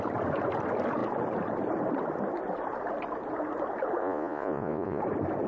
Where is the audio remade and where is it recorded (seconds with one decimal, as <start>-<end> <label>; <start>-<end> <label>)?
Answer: 0.0-4.0 recorded; 4.0-5.0 remade; 5.0-5.5 recorded